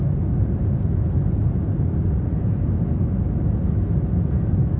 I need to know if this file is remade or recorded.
recorded